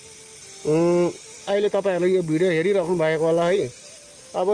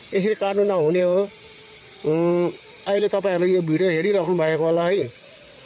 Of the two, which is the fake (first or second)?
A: second